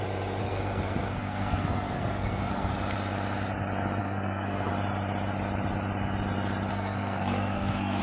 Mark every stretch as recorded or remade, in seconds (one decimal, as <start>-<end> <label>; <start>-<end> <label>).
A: 0.0-0.4 recorded; 0.4-2.7 remade; 2.7-4.0 recorded; 4.0-4.7 remade; 4.7-6.7 recorded; 6.7-8.0 remade